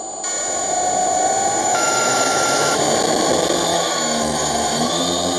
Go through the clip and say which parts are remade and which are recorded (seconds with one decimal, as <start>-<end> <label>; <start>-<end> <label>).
0.0-1.6 recorded; 1.6-2.8 remade; 2.8-3.7 recorded; 3.7-5.0 remade; 5.0-5.4 recorded

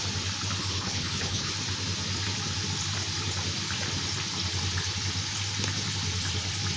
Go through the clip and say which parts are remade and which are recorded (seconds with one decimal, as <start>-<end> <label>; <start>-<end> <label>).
0.0-0.6 recorded; 0.6-1.5 remade; 1.5-6.8 recorded